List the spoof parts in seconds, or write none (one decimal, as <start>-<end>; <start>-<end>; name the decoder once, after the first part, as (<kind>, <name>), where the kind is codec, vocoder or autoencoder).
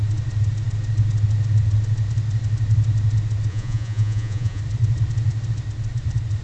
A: 3.5-4.6 (vocoder, Vocos)